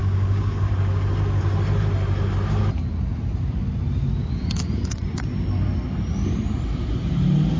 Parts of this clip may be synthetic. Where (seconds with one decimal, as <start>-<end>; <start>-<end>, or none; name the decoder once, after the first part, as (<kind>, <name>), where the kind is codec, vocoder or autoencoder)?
0.0-0.7 (codec, DAC)